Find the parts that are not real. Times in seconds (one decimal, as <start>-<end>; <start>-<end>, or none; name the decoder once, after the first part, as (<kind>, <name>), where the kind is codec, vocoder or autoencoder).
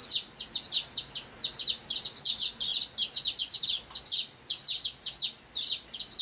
none